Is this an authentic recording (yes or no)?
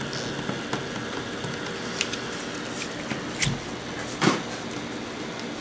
yes